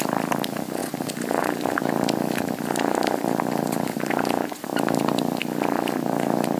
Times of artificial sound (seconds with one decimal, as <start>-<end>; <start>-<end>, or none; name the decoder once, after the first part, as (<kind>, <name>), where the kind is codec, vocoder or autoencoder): none